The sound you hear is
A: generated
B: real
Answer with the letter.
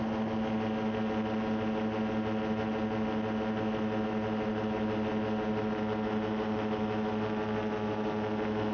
B